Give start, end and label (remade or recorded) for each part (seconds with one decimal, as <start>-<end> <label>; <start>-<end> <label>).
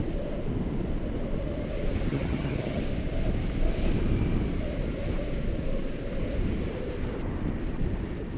0.0-2.1 recorded; 2.1-2.8 remade; 2.8-8.4 recorded